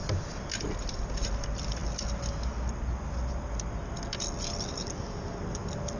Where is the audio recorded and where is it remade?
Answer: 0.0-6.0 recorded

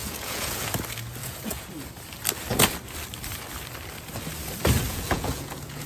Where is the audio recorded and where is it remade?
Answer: 0.0-0.7 remade; 0.7-1.2 recorded; 1.2-1.7 remade; 1.7-4.9 recorded; 4.9-5.9 remade

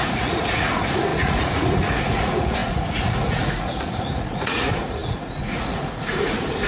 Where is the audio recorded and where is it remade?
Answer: 0.0-6.7 remade

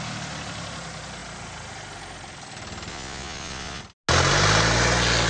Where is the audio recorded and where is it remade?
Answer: 0.0-2.9 recorded; 2.9-3.8 remade; 3.8-5.3 recorded

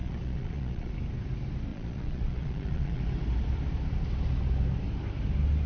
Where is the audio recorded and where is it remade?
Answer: 0.0-0.9 remade; 0.9-1.7 recorded; 1.7-3.0 remade; 3.0-5.7 recorded

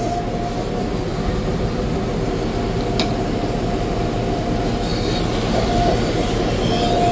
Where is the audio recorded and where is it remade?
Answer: 0.0-7.1 recorded